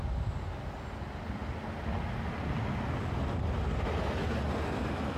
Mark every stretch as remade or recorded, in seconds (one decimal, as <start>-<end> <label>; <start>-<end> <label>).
0.0-5.2 recorded

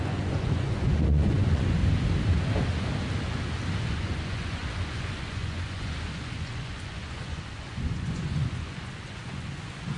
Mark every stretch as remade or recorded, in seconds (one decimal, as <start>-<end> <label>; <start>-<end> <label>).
0.0-1.8 remade; 1.8-3.8 recorded; 3.8-10.0 remade

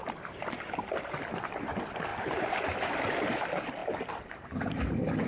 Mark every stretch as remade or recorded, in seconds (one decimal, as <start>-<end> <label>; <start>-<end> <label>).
0.0-1.7 remade; 1.7-2.1 recorded; 2.1-3.3 remade; 3.3-3.8 recorded; 3.8-5.3 remade

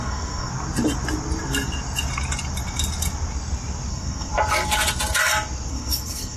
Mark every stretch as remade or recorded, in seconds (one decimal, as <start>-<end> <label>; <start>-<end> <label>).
0.0-0.5 remade; 0.5-3.9 recorded; 3.9-4.3 remade; 4.3-5.7 recorded; 5.7-6.4 remade

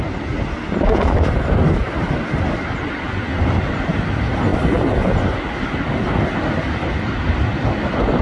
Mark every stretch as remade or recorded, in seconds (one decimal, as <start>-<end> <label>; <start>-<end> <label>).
0.0-8.2 recorded

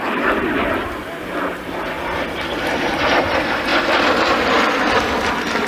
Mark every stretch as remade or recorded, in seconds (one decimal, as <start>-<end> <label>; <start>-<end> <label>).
0.0-5.7 recorded

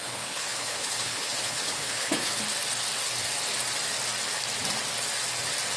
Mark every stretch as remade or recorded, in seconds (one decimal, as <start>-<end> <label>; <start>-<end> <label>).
0.0-2.3 remade; 2.3-5.8 recorded

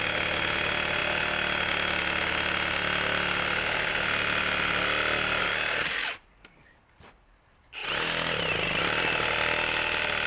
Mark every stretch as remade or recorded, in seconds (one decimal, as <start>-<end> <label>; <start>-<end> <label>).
0.0-10.3 recorded